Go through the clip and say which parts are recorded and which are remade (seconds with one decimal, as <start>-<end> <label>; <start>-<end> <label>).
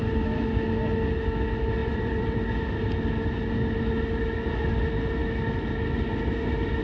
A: 0.0-1.8 recorded; 1.8-2.5 remade; 2.5-6.8 recorded